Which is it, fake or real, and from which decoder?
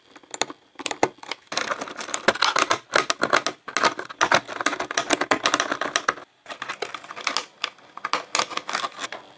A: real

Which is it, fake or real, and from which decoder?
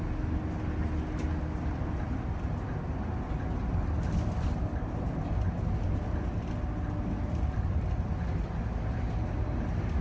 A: real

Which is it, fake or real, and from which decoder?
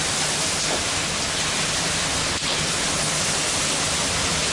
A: real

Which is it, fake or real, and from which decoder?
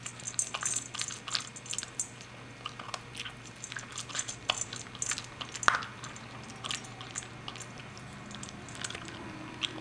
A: real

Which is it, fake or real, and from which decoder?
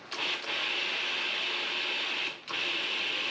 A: real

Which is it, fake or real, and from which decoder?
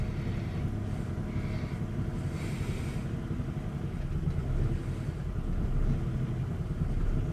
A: real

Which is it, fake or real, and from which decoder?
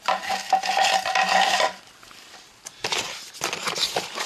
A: real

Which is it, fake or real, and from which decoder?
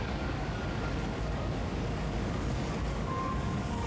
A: fake, codec, DAC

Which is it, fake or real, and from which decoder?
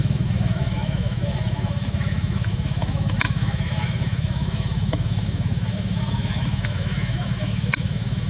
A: fake, autoencoder, DAC-VAE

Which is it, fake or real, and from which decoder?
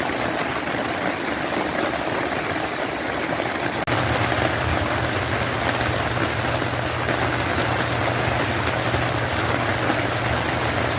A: real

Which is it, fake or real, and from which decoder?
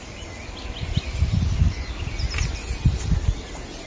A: real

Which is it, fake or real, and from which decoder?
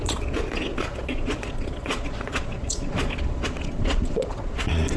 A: fake, vocoder, Vocos